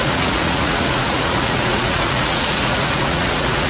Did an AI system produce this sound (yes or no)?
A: yes